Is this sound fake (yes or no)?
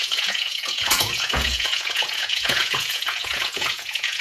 yes